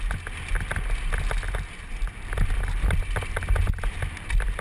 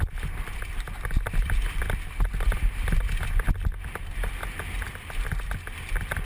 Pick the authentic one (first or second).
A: first